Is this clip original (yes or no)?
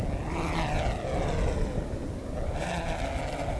yes